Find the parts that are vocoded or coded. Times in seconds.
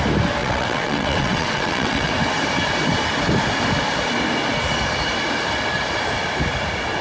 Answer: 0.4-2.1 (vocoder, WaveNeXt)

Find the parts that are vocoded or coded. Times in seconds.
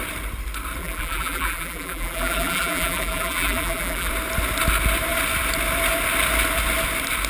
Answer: 0.8-4.1 (vocoder, BigVGAN v2)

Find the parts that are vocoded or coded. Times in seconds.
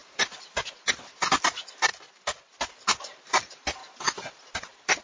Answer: none